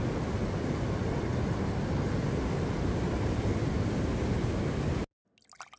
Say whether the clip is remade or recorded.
recorded